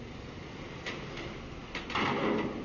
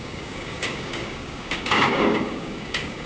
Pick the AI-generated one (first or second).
second